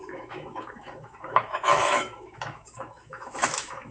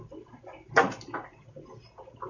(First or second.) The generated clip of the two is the first